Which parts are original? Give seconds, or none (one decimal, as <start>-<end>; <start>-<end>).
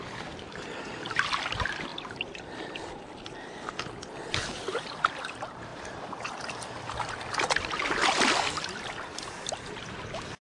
none